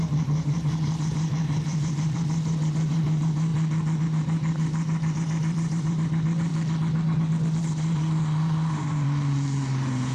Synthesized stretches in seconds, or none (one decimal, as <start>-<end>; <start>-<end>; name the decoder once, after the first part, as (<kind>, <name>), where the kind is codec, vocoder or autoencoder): 0.0-3.5 (vocoder, BigVGAN v2); 4.0-6.5; 7.6-10.1